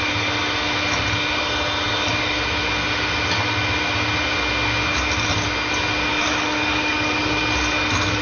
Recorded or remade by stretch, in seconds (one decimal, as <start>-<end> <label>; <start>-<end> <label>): 0.0-6.1 recorded; 6.1-7.4 remade; 7.4-8.2 recorded